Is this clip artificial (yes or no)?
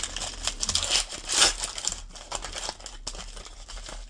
no